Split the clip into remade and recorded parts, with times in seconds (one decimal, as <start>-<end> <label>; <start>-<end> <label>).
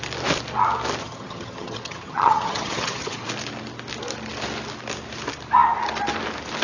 0.0-1.0 recorded; 1.0-3.3 remade; 3.3-6.6 recorded